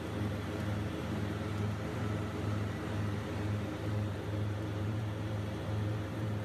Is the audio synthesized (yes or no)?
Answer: yes